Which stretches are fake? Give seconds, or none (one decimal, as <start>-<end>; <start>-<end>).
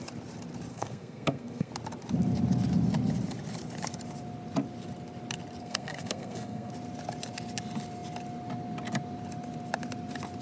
0.7-1.7; 5.6-6.7